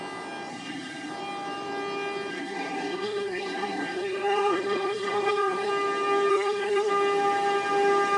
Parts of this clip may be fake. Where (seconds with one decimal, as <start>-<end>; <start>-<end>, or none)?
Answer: 0.5-1.1; 2.3-5.7; 6.3-6.9